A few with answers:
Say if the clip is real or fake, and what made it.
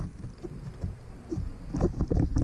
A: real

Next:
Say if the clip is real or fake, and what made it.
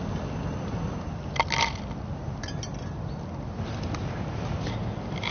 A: real